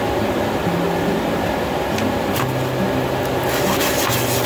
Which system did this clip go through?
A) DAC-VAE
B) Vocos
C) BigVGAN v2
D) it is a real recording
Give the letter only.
D